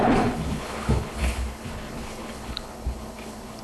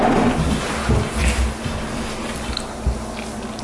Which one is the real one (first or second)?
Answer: second